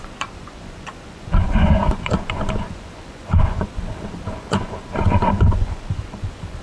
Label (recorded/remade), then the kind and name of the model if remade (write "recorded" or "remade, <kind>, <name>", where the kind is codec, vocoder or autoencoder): remade, vocoder, Vocos